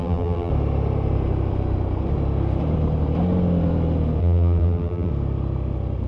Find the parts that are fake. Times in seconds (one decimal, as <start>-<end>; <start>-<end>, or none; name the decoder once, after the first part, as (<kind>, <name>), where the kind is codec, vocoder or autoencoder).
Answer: 0.0-0.5 (vocoder, BigVGAN v2); 4.2-5.1